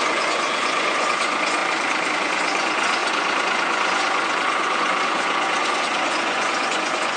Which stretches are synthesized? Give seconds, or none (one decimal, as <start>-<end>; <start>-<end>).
0.0-1.6; 2.1-7.2